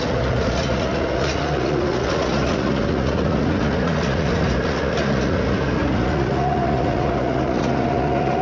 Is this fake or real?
fake